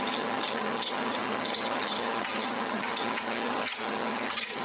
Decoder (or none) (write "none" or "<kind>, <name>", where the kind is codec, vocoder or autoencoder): vocoder, HiFi-GAN